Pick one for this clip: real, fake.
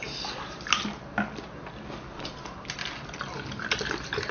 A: real